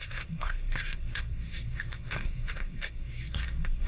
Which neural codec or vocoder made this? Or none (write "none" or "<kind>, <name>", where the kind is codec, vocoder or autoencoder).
codec, SNAC